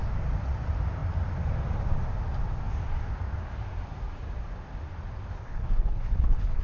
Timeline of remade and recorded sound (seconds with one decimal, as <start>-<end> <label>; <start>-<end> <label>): 0.0-5.3 recorded; 5.3-6.6 remade